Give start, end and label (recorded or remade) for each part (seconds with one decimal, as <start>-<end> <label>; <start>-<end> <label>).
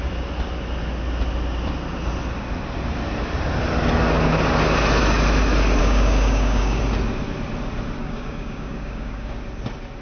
0.0-5.8 recorded; 5.8-6.8 remade; 6.8-8.0 recorded; 8.0-9.3 remade; 9.3-10.0 recorded